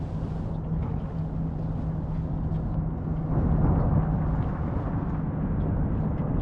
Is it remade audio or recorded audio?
recorded